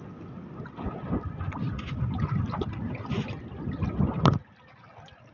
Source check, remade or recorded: recorded